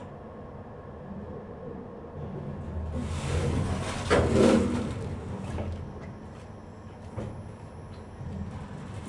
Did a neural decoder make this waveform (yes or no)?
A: no